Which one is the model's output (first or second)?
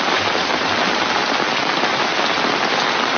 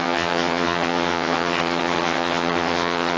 second